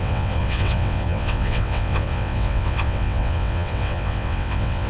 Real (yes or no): no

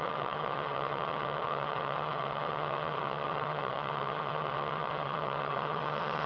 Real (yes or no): no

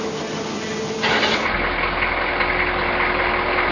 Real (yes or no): yes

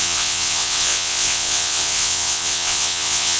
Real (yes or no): no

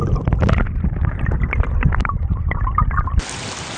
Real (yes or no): yes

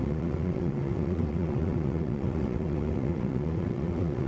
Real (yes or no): no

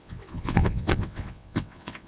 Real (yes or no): no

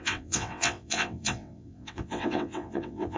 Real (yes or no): no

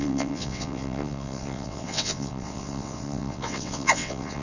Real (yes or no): no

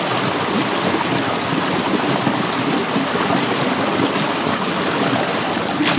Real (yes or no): yes